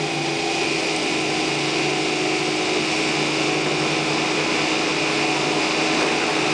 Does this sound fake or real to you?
real